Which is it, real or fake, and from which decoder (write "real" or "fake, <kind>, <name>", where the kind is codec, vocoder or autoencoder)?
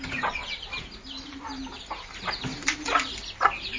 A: real